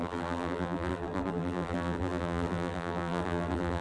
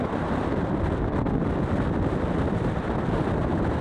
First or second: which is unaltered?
second